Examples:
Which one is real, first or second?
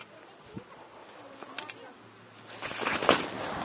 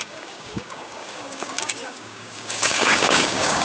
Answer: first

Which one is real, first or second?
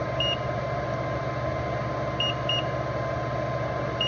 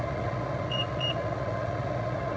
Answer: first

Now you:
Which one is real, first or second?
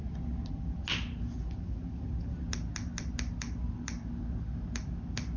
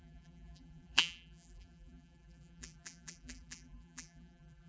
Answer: first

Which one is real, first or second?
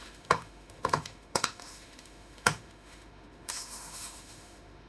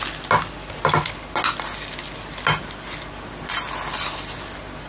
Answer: second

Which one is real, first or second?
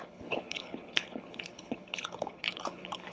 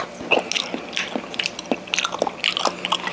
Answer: second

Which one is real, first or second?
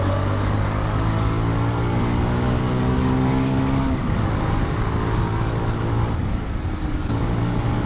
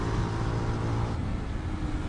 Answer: second